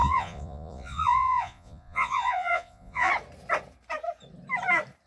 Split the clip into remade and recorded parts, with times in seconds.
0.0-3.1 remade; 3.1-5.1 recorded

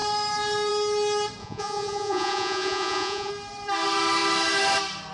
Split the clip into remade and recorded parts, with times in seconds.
0.0-1.4 recorded; 1.4-3.3 remade; 3.3-5.1 recorded

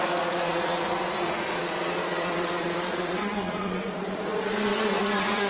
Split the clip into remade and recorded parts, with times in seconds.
0.0-5.5 remade